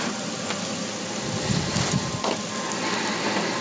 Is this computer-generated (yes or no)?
no